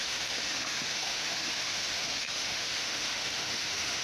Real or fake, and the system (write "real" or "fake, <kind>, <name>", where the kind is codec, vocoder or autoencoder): fake, autoencoder, DAC-VAE